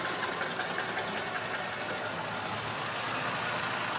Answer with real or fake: real